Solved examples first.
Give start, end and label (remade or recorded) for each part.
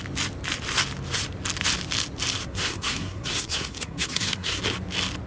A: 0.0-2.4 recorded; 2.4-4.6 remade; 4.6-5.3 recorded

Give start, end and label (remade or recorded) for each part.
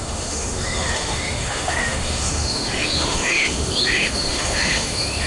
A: 0.0-5.3 remade